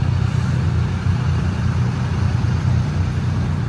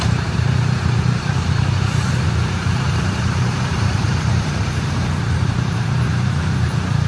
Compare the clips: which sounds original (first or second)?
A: first